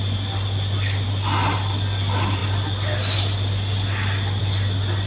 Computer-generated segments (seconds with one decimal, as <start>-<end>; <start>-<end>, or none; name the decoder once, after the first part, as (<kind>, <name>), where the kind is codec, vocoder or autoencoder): none